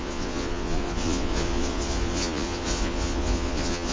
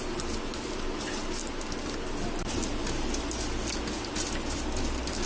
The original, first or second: second